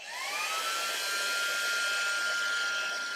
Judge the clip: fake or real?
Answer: real